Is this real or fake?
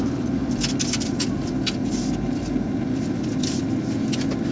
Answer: real